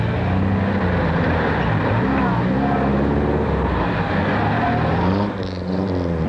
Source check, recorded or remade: recorded